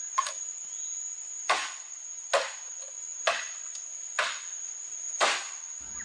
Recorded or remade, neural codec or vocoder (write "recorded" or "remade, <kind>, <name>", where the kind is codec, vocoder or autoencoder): recorded